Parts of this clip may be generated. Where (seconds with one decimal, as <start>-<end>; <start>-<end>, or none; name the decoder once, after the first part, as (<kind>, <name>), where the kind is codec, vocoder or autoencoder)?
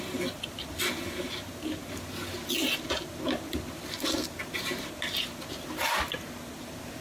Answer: none